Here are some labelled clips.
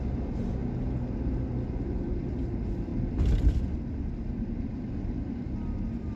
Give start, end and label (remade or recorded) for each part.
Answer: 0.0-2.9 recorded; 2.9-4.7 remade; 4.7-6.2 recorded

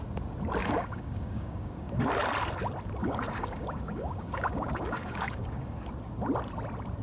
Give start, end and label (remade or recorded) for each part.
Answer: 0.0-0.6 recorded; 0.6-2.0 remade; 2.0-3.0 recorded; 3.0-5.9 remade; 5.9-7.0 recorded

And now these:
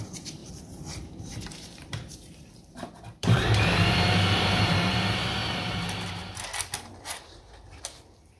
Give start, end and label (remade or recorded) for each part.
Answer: 0.0-5.4 remade; 5.4-6.1 recorded; 6.1-6.5 remade; 6.5-7.2 recorded; 7.2-8.4 remade